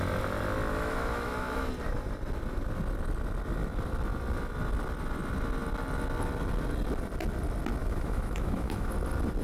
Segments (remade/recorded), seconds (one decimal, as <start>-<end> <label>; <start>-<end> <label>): 0.0-0.7 recorded; 0.7-1.7 remade; 1.7-7.8 recorded; 7.8-8.9 remade; 8.9-9.4 recorded